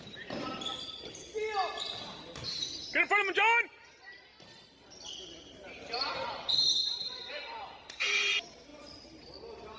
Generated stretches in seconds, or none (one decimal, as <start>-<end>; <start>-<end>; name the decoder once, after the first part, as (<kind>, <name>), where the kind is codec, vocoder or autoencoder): 0.0-1.2 (vocoder, BigVGAN v2); 2.5-2.9; 3.7-4.3; 6.1-8.7